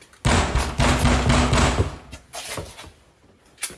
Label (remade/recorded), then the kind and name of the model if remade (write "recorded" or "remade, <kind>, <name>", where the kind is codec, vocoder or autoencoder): recorded